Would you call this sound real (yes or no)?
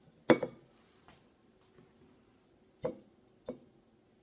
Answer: yes